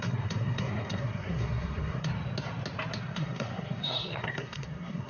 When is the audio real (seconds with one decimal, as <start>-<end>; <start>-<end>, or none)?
2.1-3.0